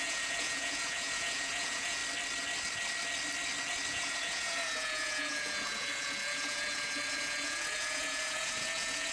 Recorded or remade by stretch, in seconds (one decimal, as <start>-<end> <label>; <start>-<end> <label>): 0.0-2.0 remade; 2.0-3.9 recorded; 3.9-9.1 remade